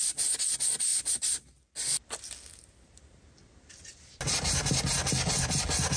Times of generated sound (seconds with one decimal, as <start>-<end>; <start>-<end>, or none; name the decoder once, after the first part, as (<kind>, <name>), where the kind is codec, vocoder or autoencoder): none